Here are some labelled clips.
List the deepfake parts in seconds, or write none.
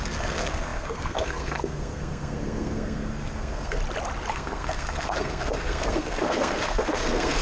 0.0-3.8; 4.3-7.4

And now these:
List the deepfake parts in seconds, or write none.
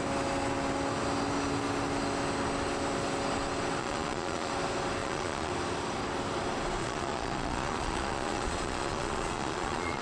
3.8-4.5; 5.0-5.5; 6.8-10.0